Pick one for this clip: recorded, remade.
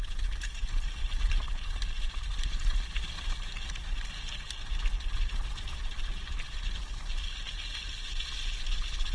recorded